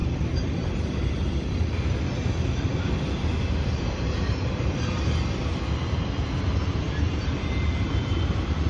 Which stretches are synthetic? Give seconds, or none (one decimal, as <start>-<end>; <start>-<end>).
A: 0.6-1.0; 3.2-8.7